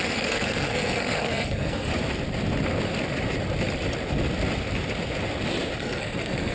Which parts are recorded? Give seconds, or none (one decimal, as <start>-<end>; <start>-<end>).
1.9-5.8